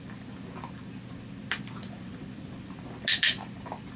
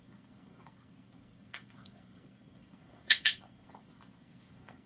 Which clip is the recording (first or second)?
first